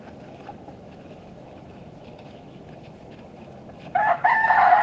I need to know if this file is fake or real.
fake